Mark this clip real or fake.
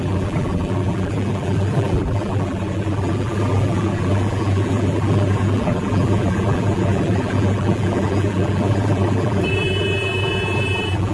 fake